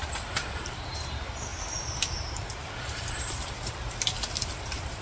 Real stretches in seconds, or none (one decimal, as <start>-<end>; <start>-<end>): none